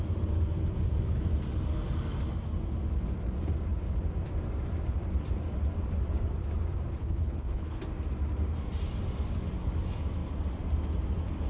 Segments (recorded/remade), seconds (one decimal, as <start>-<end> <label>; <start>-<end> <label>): 0.0-7.0 recorded; 7.0-7.8 remade; 7.8-11.5 recorded